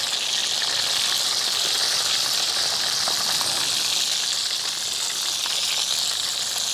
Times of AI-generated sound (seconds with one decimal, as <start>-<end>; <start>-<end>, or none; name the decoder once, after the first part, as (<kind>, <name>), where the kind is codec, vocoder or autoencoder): none